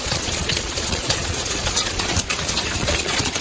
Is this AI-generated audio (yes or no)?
yes